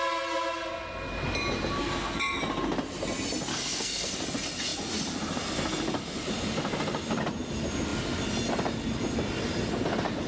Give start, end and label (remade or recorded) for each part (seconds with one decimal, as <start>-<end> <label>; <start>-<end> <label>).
0.0-1.8 recorded; 1.8-2.4 remade; 2.4-3.5 recorded; 3.5-4.1 remade; 4.1-10.3 recorded